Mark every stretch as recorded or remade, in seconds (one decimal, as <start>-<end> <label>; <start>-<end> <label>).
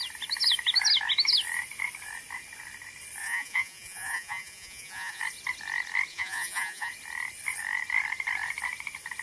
0.0-3.2 recorded; 3.2-5.2 remade; 5.2-6.1 recorded; 6.1-6.9 remade; 6.9-9.2 recorded